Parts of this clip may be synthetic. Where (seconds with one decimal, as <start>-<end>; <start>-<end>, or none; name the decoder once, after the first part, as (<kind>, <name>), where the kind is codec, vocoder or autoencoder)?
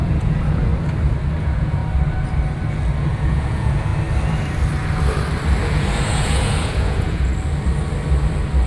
0.0-0.7 (vocoder, Vocos); 1.4-1.8; 3.0-3.9; 5.6-7.3